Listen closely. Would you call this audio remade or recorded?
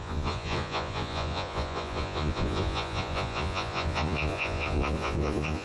remade